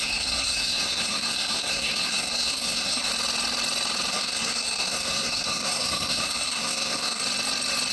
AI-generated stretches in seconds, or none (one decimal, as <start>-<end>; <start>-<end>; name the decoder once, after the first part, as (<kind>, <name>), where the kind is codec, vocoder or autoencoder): 0.0-3.1 (codec, SNAC); 4.1-7.2